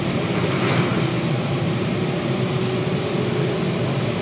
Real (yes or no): yes